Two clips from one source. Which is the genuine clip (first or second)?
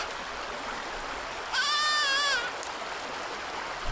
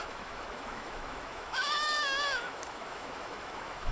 first